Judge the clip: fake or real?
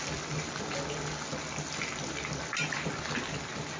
real